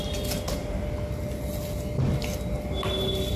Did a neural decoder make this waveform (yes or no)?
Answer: no